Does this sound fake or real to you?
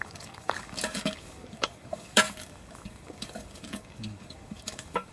fake